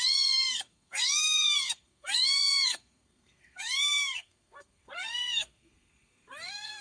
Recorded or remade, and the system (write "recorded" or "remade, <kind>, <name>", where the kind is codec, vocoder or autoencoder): remade, codec, SNAC